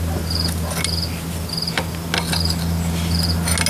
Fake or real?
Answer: real